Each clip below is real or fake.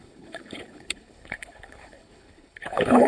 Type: fake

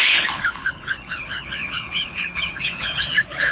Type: fake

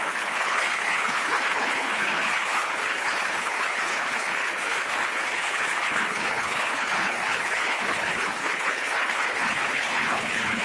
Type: fake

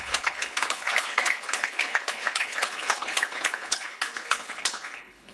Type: fake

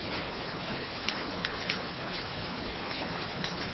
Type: fake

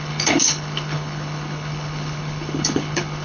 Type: fake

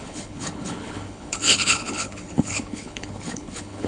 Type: fake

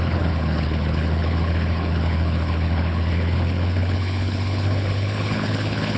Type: fake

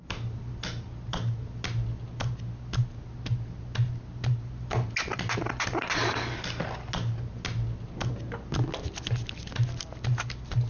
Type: real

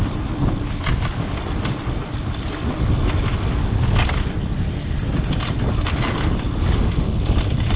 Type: real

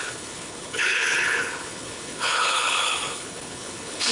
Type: fake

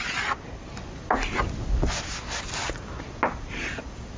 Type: real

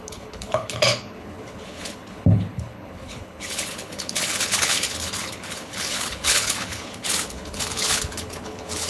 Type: fake